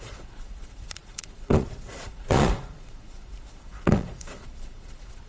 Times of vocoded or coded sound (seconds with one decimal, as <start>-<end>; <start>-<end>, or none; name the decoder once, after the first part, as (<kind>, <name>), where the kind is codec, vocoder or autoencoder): 0.0-5.3 (vocoder, Vocos)